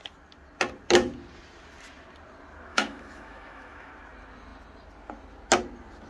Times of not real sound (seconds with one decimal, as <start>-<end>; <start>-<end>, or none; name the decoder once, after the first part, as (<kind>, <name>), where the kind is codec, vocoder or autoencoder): 2.7-3.9 (autoencoder, DAC-VAE)